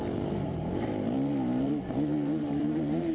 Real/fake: fake